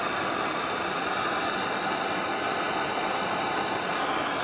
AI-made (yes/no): no